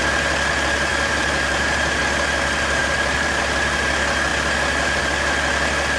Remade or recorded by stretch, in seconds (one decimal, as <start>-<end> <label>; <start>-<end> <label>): 0.0-0.9 recorded; 0.9-2.0 remade; 2.0-2.8 recorded; 2.8-3.4 remade; 3.4-6.0 recorded

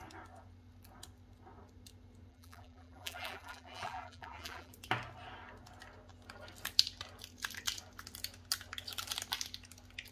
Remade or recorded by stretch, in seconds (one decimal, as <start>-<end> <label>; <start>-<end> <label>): 0.0-2.3 recorded; 2.3-4.7 remade; 4.7-10.1 recorded

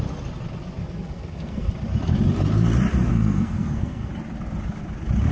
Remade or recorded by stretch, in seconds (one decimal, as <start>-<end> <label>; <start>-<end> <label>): 0.0-0.8 recorded; 0.8-1.7 remade; 1.7-3.1 recorded; 3.1-4.1 remade; 4.1-5.3 recorded